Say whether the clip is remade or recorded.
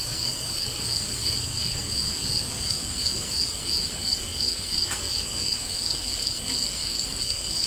remade